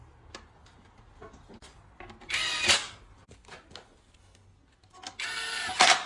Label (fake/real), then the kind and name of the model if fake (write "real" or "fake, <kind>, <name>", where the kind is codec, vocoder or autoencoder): real